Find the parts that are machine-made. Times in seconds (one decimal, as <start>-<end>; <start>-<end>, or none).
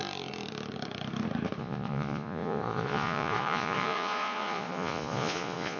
1.6-5.8